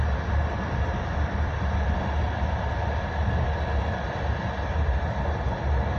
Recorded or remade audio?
remade